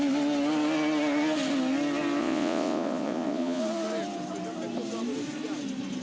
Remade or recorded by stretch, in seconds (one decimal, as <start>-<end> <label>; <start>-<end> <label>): 0.0-2.2 recorded; 2.2-3.6 remade; 3.6-6.0 recorded